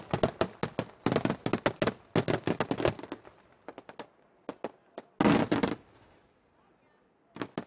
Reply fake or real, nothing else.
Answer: real